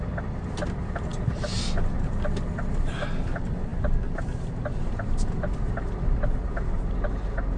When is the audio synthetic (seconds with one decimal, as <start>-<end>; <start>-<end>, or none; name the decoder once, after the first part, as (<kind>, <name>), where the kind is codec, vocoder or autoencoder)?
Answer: none

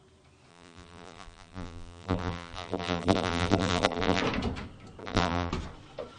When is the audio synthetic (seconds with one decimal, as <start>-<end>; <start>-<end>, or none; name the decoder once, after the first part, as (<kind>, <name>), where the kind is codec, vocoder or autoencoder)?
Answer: 0.5-4.2 (vocoder, BigVGAN v2); 5.0-5.5

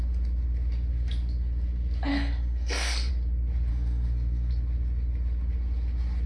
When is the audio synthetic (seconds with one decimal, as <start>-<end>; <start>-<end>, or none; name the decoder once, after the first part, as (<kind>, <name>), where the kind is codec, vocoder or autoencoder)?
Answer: 2.1-3.1 (codec, SNAC); 3.7-4.5

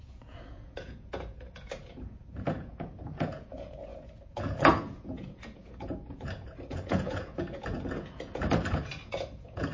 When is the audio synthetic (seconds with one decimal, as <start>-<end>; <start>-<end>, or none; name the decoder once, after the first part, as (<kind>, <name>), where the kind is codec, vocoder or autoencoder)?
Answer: 0.0-9.7 (vocoder, Vocos)

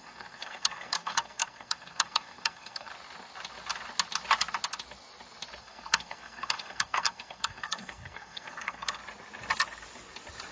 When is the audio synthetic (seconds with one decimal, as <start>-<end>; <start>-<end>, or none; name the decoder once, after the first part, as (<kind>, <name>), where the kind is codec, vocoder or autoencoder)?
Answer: 0.0-2.9 (codec, SNAC); 5.6-9.0

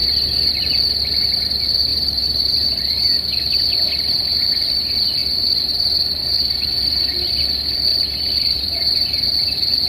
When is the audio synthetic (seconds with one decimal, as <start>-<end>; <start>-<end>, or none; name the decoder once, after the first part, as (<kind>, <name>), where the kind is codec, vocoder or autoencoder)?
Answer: 1.9-2.8 (vocoder, BigVGAN v2); 7.9-9.1

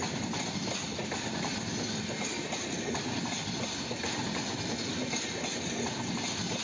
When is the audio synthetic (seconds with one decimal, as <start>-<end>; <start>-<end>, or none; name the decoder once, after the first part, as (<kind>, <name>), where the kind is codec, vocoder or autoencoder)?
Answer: none